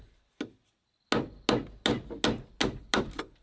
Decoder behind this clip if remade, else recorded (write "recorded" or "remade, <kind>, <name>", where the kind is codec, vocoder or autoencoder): recorded